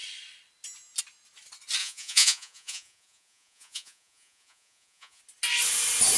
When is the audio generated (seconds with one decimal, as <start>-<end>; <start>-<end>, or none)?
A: 1.8-5.2